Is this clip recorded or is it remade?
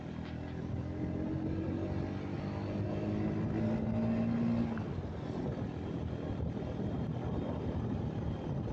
recorded